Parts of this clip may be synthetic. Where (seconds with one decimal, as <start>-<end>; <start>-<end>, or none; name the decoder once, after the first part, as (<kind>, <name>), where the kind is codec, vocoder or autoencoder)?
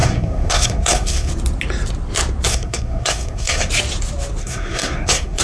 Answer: 0.0-1.3 (codec, SNAC); 2.5-3.7; 4.4-5.4